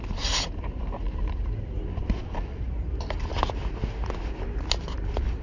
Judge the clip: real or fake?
real